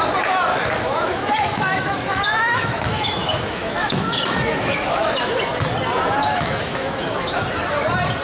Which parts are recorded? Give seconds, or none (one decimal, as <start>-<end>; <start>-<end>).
0.0-0.5; 5.4-6.2; 7.3-8.2